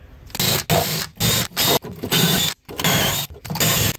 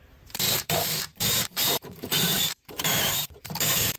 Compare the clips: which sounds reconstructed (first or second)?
second